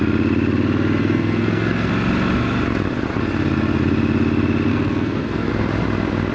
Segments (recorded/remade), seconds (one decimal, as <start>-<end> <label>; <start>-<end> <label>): 0.0-1.0 recorded; 1.0-1.9 remade; 1.9-4.7 recorded; 4.7-5.5 remade; 5.5-6.3 recorded